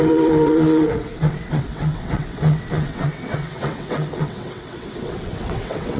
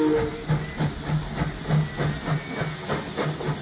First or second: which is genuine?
second